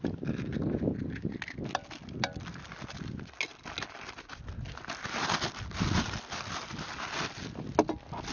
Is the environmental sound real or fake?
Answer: real